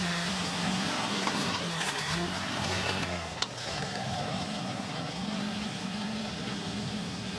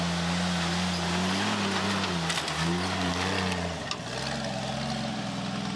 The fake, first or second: first